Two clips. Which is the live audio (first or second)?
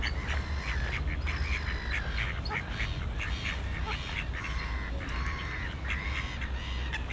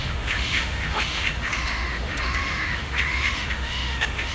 first